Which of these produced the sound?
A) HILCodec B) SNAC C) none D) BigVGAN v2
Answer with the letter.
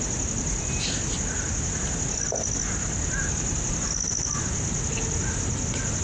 C